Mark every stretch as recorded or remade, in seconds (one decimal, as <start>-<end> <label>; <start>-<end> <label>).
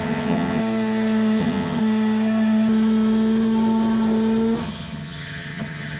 0.0-0.6 remade; 0.6-1.4 recorded; 1.4-1.8 remade; 1.8-4.6 recorded; 4.6-6.0 remade